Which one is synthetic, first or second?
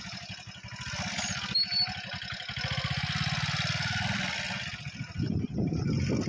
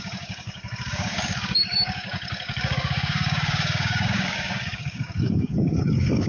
second